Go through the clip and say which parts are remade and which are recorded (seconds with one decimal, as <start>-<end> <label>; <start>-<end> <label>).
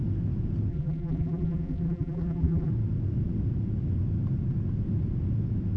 0.0-0.7 recorded; 0.7-2.7 remade; 2.7-5.8 recorded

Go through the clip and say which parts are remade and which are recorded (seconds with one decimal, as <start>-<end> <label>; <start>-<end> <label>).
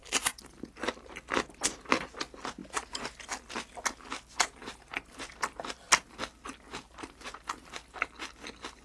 0.0-4.6 recorded; 4.6-5.3 remade; 5.3-6.7 recorded; 6.7-7.7 remade; 7.7-8.8 recorded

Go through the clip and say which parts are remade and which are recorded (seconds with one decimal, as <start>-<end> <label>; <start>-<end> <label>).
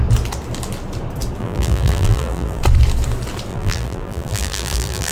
0.0-1.4 recorded; 1.4-2.6 remade; 2.6-3.5 recorded; 3.5-5.1 remade